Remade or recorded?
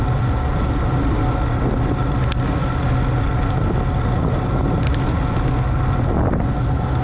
recorded